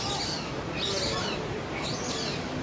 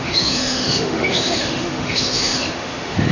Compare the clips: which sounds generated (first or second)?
second